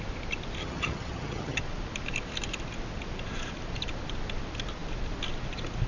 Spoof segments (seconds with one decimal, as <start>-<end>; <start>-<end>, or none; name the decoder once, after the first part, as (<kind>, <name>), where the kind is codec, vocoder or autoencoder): 0.6-1.6 (vocoder, HiFi-GAN)